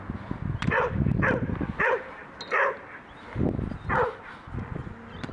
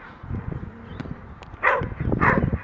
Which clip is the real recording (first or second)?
first